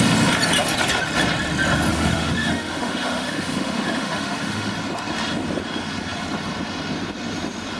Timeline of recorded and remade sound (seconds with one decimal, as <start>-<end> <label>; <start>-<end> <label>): 0.0-1.9 recorded; 1.9-4.7 remade; 4.7-7.8 recorded